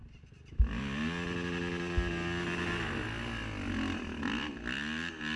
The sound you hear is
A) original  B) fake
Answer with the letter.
A